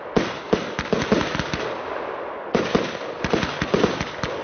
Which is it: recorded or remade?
recorded